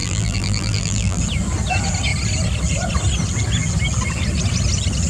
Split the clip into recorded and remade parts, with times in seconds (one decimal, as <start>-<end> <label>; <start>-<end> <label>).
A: 0.0-1.2 remade; 1.2-5.1 recorded